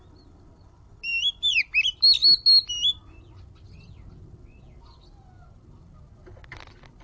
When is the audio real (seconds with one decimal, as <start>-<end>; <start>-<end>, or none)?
0.0-7.0